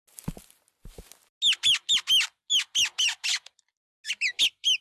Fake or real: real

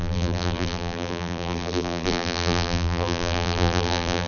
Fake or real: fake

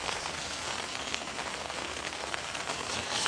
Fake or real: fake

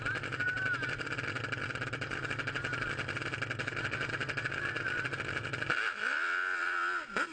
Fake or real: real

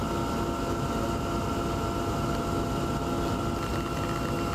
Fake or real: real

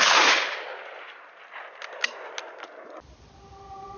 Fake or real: real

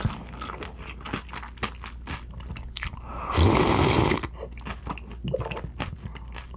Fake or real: real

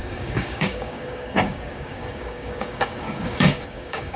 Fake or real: fake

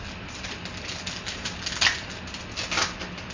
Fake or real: real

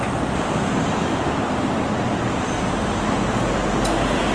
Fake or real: real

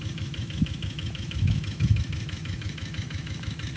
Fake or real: fake